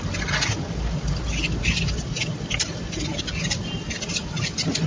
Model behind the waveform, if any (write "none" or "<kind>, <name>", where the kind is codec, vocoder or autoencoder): none